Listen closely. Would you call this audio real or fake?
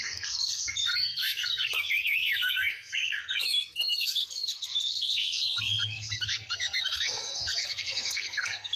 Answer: fake